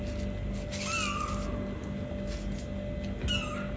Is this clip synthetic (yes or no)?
no